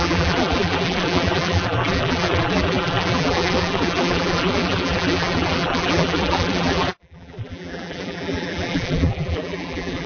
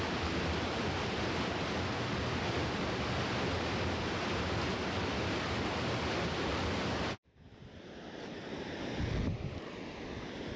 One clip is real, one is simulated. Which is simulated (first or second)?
first